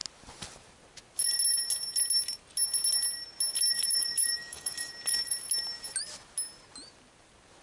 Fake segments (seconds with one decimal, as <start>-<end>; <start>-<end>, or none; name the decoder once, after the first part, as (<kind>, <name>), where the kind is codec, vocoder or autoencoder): 3.7-4.9 (autoencoder, DAC-VAE)